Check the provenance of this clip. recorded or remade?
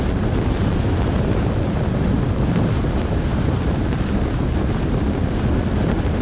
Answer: recorded